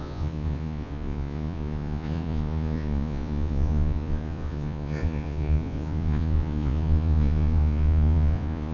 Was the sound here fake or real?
fake